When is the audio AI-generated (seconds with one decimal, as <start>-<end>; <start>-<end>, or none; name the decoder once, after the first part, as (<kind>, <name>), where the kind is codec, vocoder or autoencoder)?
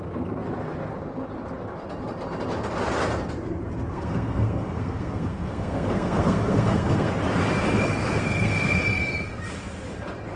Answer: 3.9-7.1 (codec, SNAC); 8.0-8.8